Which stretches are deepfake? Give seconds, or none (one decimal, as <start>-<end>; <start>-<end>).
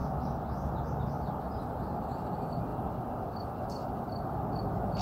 none